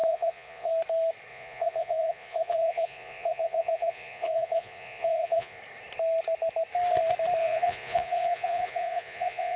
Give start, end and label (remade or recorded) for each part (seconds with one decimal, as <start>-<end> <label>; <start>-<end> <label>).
0.0-0.7 remade; 0.7-1.3 recorded; 1.3-5.6 remade; 5.6-7.4 recorded; 7.4-9.6 remade